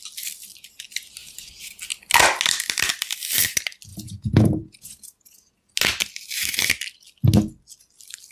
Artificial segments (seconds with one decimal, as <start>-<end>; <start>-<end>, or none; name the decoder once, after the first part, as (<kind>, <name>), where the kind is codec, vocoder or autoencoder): 3.9-5.7 (vocoder, Vocos)